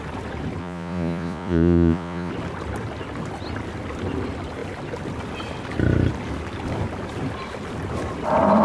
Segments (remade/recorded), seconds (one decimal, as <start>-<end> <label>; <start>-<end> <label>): 0.0-0.6 recorded; 0.6-2.3 remade; 2.3-8.6 recorded